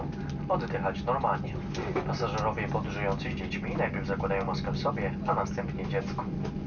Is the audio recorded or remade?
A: recorded